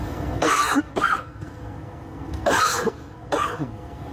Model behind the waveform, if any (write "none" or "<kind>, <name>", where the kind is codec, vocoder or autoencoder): codec, SNAC